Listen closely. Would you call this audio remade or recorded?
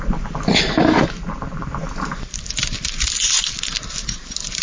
recorded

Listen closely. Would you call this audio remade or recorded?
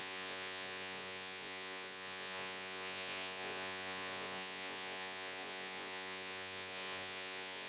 remade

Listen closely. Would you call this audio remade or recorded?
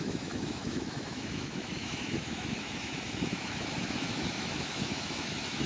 remade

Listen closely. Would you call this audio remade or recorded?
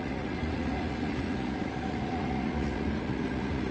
remade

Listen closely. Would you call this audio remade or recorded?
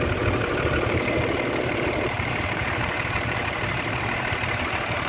remade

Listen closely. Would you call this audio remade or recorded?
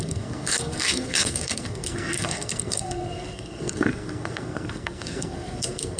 remade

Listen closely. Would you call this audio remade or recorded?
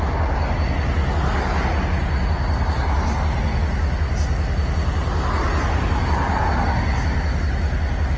recorded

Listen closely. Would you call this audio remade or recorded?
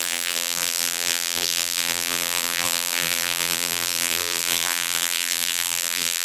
remade